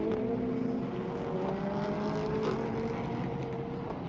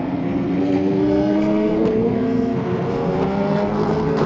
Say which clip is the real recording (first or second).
first